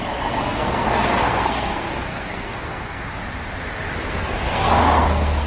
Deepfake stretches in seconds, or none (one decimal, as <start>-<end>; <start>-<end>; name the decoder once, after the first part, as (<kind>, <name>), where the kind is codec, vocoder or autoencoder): 0.0-3.2 (codec, SNAC); 4.0-5.5